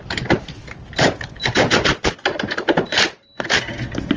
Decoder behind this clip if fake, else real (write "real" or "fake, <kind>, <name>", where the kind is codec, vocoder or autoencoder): real